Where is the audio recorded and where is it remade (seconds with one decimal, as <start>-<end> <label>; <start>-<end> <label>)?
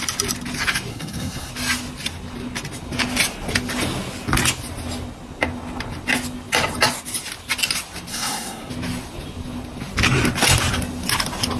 0.0-0.9 recorded; 0.9-1.5 remade; 1.5-8.1 recorded; 8.1-8.7 remade; 8.7-11.6 recorded